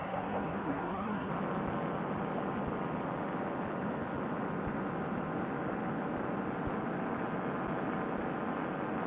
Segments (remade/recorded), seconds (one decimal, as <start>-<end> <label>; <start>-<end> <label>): 0.0-1.3 remade; 1.3-9.1 recorded